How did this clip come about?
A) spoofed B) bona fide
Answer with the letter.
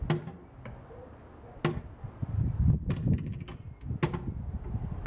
B